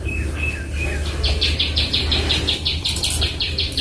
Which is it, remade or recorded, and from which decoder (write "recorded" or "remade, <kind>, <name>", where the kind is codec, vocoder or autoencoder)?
recorded